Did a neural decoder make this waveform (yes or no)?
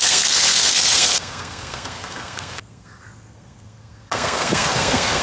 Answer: yes